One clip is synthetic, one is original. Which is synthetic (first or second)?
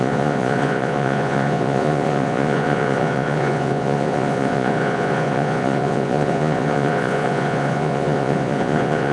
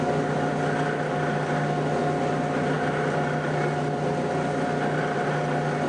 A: first